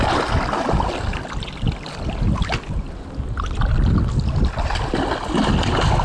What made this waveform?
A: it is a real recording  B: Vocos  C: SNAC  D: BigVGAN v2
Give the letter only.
A